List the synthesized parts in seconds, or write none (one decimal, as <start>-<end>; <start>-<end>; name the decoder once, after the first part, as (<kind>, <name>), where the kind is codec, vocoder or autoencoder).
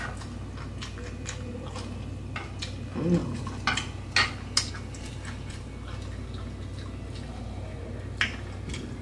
none